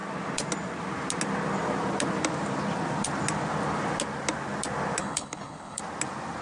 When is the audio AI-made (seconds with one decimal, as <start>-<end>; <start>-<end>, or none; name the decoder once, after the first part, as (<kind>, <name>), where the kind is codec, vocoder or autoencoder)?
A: 5.0-5.8 (codec, HILCodec)